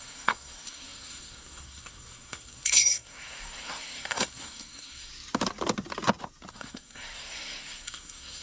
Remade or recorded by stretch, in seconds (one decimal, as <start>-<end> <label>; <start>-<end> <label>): 0.0-5.1 remade; 5.1-6.5 recorded; 6.5-8.4 remade